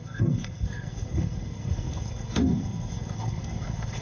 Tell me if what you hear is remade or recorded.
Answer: remade